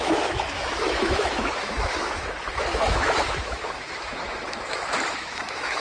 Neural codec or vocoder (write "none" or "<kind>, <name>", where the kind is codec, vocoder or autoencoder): autoencoder, DAC-VAE